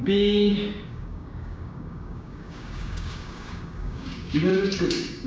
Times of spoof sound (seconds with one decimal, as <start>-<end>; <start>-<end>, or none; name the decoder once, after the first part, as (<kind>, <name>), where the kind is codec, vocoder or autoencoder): 0.0-5.3 (codec, DAC)